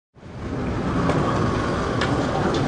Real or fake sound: real